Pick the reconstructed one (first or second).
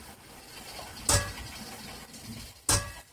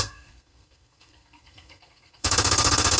second